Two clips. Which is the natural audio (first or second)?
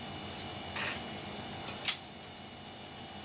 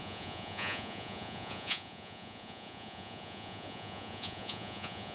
first